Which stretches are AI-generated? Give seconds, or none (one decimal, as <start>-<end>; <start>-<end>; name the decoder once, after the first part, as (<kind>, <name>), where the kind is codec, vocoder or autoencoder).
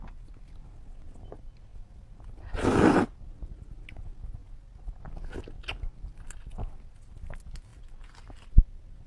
7.7-8.5 (vocoder, BigVGAN v2)